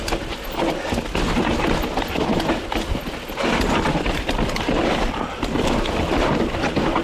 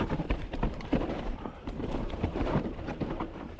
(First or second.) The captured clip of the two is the first